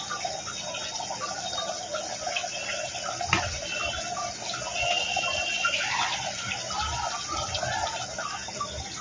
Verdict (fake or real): real